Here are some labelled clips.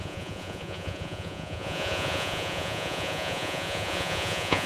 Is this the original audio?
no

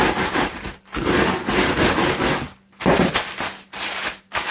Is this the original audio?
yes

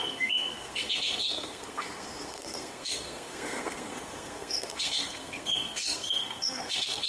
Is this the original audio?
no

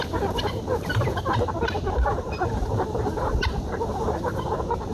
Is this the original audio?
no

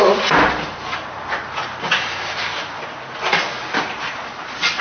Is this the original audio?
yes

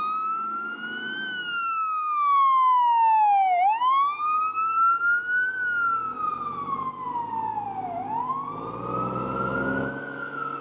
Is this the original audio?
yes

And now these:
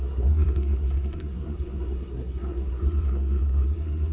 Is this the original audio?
no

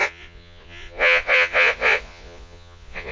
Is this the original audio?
no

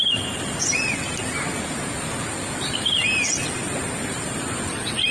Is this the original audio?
yes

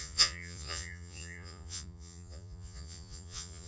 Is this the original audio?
no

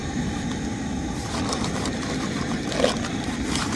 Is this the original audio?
no